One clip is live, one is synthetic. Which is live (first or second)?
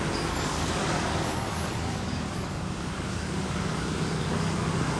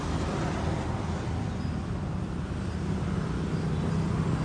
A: second